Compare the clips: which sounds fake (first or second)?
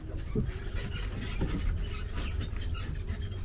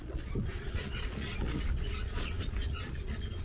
second